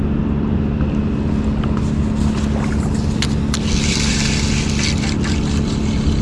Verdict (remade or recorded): recorded